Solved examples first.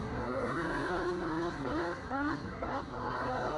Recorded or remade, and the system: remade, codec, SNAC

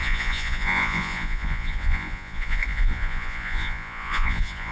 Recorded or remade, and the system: remade, vocoder, Vocos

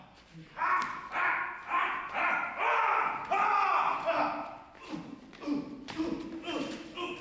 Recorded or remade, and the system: recorded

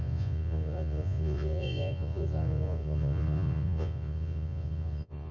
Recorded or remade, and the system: remade, vocoder, Vocos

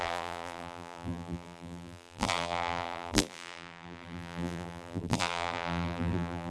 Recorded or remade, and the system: remade, vocoder, BigVGAN v2